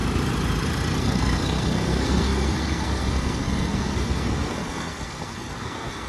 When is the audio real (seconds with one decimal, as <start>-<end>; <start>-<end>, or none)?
0.0-1.0